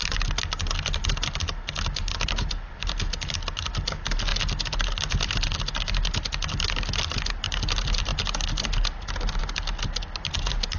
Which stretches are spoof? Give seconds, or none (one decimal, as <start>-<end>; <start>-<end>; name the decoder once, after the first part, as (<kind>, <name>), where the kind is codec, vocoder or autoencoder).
none